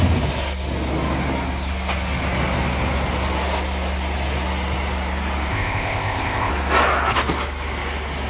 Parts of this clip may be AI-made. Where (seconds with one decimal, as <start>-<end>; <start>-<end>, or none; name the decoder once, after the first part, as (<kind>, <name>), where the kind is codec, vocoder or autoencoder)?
5.5-6.5 (codec, ZipCodec)

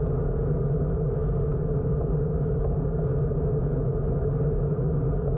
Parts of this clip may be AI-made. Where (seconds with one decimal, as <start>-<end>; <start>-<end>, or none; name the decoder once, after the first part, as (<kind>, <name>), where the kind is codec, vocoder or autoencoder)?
none

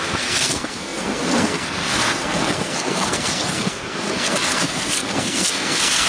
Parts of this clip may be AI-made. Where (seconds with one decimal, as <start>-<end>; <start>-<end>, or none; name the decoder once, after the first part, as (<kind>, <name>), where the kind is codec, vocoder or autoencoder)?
0.0-6.1 (codec, SNAC)

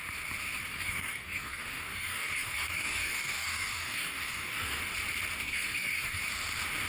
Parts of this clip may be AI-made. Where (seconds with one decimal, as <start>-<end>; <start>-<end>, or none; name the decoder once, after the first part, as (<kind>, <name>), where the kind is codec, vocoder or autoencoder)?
0.7-4.8 (codec, DAC); 5.4-6.2